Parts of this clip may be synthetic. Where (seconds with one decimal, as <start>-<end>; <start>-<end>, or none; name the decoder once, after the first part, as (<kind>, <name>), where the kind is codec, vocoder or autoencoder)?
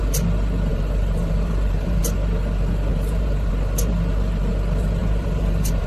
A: 0.7-2.0 (vocoder, BigVGAN v2); 2.9-3.5; 5.0-5.9